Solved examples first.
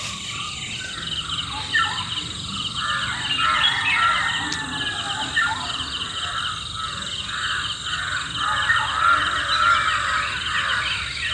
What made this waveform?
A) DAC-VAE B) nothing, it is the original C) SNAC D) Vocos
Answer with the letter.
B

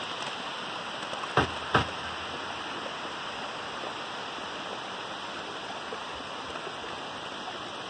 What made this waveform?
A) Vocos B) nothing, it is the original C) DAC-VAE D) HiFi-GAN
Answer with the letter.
B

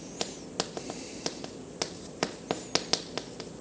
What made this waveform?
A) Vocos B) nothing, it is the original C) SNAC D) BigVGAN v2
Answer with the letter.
B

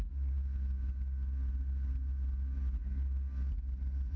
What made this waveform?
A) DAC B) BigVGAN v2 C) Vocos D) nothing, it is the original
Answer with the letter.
D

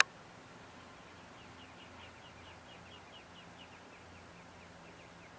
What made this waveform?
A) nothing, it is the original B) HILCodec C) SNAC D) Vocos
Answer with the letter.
A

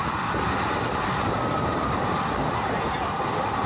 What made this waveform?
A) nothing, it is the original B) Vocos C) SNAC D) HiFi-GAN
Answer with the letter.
A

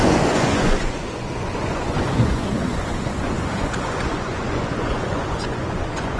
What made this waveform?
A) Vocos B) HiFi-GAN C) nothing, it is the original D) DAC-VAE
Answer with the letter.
A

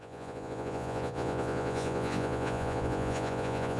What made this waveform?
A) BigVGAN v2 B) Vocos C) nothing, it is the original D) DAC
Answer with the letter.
B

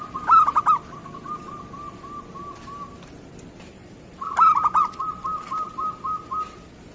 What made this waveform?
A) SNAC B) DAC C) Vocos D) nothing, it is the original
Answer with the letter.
D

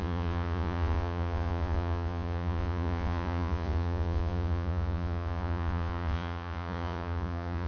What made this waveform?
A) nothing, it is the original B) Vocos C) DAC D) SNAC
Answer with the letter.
B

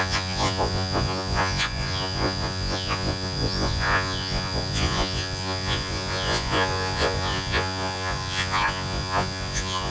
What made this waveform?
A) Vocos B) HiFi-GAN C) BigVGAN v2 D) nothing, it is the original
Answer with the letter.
A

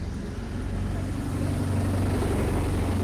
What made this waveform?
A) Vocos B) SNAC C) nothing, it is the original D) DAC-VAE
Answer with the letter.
C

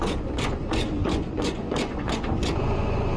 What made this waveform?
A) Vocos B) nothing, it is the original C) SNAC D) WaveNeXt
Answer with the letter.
A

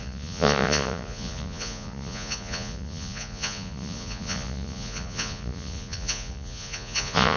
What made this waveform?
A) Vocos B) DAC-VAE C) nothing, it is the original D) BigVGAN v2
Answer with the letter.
A